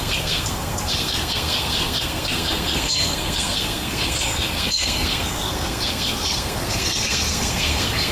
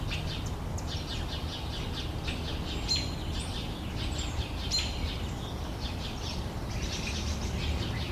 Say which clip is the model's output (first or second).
first